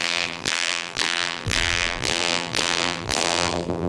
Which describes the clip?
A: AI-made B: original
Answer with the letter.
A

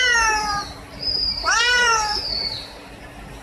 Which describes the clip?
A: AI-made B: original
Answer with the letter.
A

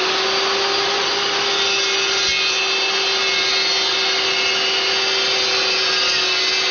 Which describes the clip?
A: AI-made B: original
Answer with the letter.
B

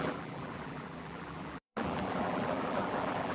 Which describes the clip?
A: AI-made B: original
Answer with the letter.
A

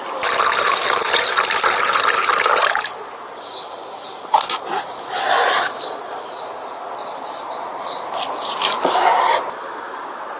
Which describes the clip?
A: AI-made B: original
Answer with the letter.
B